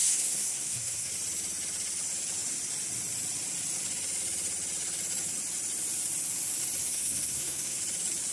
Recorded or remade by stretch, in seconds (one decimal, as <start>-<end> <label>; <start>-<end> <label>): 0.0-1.1 remade; 1.1-6.8 recorded; 6.8-7.8 remade; 7.8-8.3 recorded